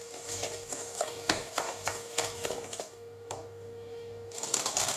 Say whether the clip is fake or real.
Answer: fake